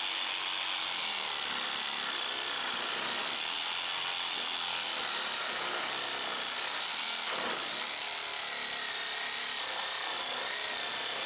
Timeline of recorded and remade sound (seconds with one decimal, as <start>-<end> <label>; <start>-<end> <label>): 0.0-11.3 recorded